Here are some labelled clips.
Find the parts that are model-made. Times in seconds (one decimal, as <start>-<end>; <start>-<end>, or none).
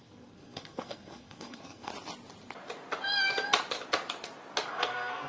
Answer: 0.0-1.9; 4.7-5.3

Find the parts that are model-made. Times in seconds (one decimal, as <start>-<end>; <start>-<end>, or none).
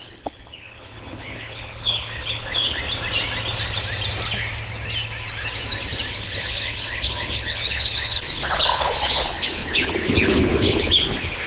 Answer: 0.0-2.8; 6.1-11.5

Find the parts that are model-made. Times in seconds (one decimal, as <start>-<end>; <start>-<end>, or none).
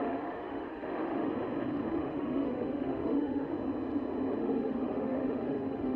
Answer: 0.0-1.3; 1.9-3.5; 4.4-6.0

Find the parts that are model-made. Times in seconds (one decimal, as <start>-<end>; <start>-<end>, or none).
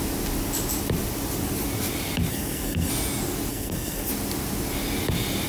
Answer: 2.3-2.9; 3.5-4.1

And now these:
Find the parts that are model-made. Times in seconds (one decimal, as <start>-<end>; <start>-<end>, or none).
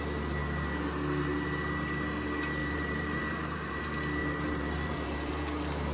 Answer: 2.6-3.8; 4.2-5.3